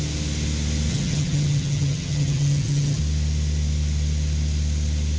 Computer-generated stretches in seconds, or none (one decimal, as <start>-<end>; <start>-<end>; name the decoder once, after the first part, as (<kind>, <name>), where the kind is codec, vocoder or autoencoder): 0.9-3.0 (vocoder, HiFi-GAN)